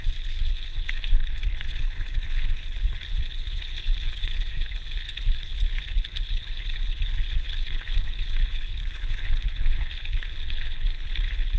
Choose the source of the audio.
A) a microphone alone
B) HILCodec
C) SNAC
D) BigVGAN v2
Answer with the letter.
B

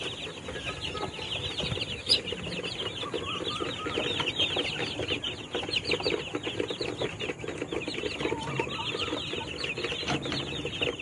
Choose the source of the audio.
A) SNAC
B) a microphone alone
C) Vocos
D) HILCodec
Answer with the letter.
B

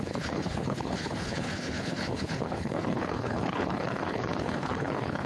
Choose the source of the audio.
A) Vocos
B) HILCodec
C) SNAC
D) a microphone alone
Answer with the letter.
B